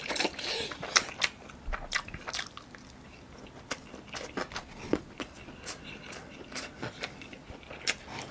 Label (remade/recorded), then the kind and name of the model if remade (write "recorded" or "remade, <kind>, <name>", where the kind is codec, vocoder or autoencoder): recorded